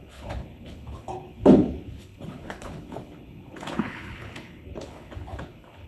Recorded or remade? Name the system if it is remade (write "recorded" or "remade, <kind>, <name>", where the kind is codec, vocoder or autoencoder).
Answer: remade, codec, HILCodec